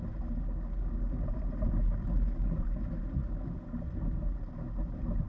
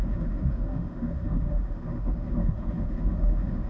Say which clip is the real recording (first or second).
first